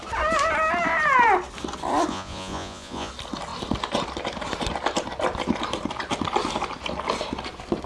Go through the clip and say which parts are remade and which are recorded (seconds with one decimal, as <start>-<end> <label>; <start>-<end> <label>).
0.0-2.1 recorded; 2.1-3.1 remade; 3.1-7.9 recorded